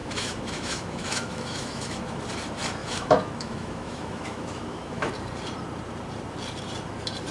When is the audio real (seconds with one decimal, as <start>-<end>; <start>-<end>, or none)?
2.2-2.8; 5.1-7.3